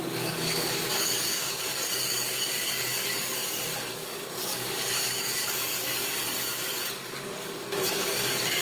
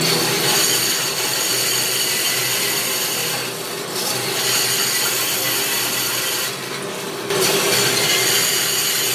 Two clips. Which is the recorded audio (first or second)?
second